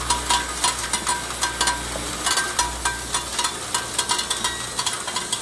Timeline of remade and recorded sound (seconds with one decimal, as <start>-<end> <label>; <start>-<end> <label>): 0.0-5.4 recorded